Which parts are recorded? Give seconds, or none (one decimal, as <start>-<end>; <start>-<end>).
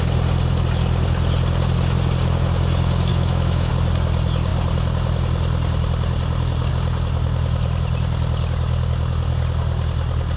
0.0-3.1; 3.7-10.4